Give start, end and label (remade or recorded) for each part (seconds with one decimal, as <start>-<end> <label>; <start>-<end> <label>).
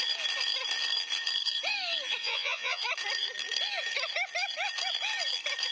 0.0-2.2 recorded; 2.2-2.8 remade; 2.8-5.7 recorded